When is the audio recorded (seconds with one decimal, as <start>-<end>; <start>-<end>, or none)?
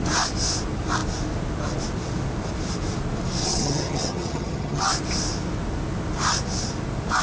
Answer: 0.0-3.4; 4.9-7.2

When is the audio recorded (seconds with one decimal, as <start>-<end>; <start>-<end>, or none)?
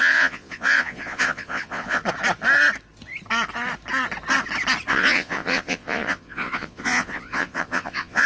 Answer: 2.0-4.9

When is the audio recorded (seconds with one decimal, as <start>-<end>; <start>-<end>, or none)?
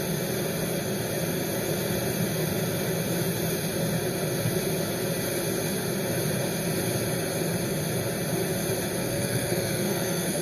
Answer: 0.0-9.0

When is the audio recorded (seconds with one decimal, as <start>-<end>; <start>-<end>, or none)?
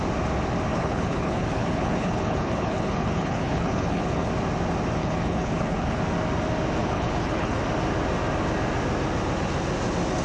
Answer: 0.0-0.7; 4.3-5.0; 6.0-6.8; 7.6-10.2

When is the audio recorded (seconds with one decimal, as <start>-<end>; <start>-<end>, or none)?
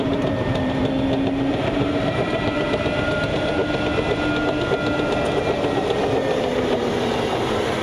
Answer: 0.8-1.5; 3.6-6.4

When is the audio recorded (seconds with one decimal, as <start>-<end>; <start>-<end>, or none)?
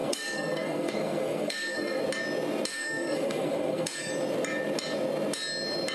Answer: 2.0-2.7; 4.1-5.9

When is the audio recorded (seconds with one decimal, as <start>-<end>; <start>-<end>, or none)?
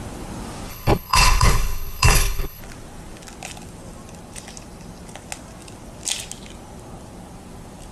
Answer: 0.0-0.7; 2.6-7.9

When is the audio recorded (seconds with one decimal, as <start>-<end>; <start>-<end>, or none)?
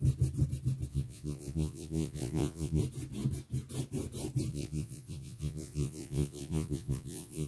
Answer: 0.0-0.9; 2.8-4.5